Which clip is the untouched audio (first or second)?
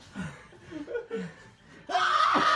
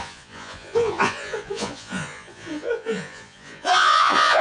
first